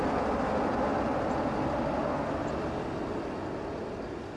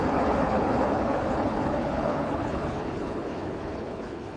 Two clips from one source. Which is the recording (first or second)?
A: first